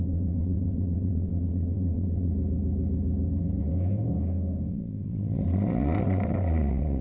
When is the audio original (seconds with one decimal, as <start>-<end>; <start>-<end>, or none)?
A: 2.3-4.7